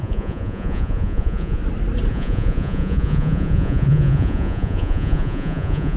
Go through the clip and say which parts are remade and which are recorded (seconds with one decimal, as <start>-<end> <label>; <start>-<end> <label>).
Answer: 0.0-1.6 remade; 1.6-2.1 recorded; 2.1-6.0 remade